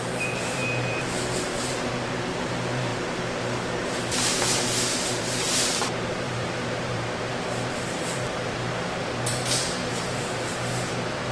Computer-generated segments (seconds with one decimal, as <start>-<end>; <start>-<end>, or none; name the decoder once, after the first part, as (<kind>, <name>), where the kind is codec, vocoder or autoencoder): 0.0-11.3 (vocoder, BigVGAN v2)